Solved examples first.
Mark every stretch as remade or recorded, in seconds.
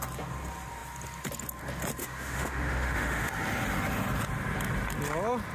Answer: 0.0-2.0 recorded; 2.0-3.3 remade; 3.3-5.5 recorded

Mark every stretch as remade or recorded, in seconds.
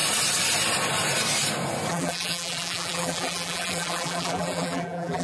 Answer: 0.0-1.9 recorded; 1.9-5.2 remade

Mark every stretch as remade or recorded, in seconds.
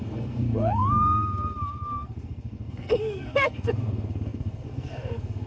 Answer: 0.0-5.5 remade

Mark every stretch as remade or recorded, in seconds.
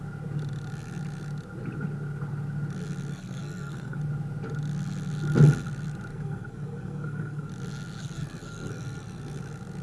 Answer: 0.0-3.1 recorded; 3.1-4.0 remade; 4.0-6.1 recorded; 6.1-7.5 remade; 7.5-8.0 recorded; 8.0-9.4 remade; 9.4-9.8 recorded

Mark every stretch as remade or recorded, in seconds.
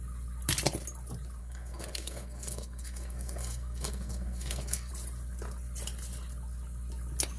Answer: 0.0-1.4 recorded; 1.4-4.9 remade; 4.9-7.4 recorded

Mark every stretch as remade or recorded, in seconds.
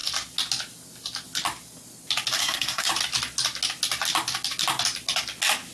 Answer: 0.0-2.4 recorded; 2.4-2.9 remade; 2.9-5.7 recorded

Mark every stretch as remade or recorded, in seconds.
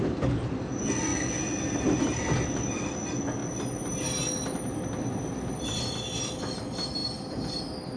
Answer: 0.0-8.0 recorded